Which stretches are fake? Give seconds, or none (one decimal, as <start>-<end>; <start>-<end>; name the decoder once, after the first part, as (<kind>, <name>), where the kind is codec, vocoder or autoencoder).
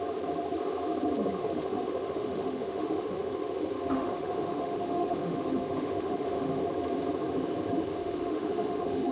1.4-6.6 (autoencoder, DAC-VAE); 7.9-9.1